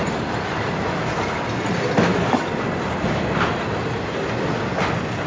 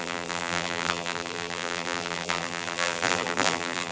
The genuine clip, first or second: first